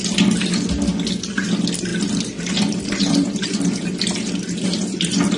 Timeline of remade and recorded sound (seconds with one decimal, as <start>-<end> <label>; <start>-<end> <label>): 0.0-1.9 recorded; 1.9-5.4 remade